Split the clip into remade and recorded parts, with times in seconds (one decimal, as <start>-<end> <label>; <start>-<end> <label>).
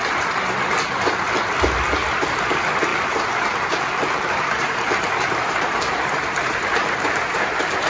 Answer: 0.0-2.9 recorded; 2.9-7.4 remade; 7.4-7.9 recorded